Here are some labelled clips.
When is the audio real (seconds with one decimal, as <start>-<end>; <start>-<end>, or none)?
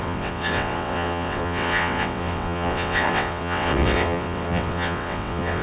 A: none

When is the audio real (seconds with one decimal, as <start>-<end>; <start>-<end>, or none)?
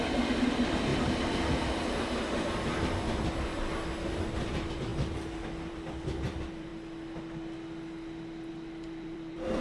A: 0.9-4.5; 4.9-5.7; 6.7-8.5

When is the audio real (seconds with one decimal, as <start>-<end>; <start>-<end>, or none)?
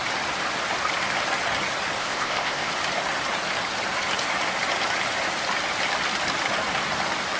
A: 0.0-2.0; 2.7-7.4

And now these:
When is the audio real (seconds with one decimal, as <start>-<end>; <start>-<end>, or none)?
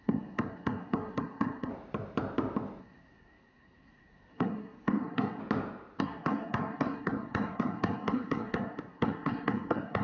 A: 1.7-2.8; 5.4-6.0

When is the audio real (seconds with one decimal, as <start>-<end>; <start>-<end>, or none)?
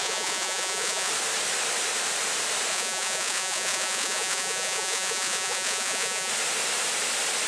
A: 1.1-2.7; 6.3-7.5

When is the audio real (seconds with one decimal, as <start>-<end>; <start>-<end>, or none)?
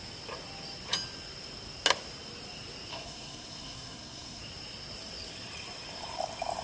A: 0.0-2.9; 4.4-6.6